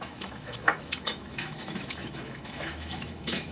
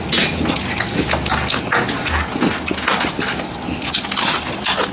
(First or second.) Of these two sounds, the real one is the second